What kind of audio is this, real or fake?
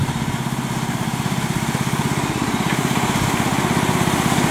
real